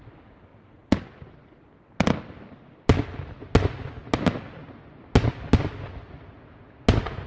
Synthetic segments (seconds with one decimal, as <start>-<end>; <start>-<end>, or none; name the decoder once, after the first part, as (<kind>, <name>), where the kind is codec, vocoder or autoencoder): none